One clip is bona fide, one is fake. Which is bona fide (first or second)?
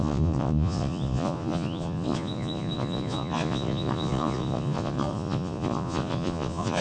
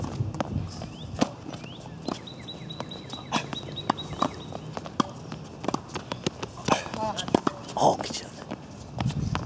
second